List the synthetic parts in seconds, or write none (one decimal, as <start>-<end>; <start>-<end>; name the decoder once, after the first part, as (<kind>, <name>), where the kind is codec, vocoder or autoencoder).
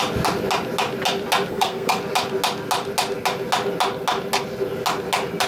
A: 1.5-2.0 (codec, SNAC)